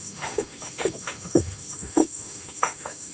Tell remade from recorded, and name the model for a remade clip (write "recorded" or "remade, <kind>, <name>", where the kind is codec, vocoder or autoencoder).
remade, autoencoder, DAC-VAE